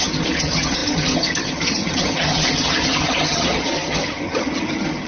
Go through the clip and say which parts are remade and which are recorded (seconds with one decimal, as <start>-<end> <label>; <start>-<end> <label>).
0.0-5.1 remade